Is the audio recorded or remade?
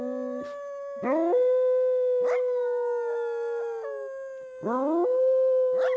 recorded